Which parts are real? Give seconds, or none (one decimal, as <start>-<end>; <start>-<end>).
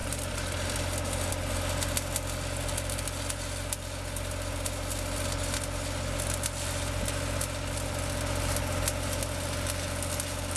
0.0-10.6